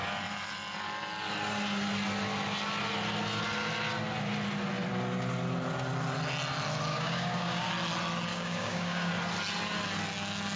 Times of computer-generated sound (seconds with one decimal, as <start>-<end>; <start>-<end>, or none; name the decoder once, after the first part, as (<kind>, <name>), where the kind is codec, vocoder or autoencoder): 6.9-7.7 (codec, DAC); 8.3-9.1